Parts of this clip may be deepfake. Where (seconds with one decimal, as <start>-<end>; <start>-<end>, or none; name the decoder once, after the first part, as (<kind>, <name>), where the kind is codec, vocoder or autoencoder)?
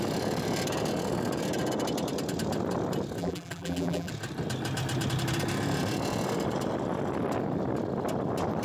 3.2-4.1 (vocoder, BigVGAN v2)